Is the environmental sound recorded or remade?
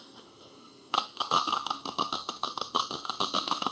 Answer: remade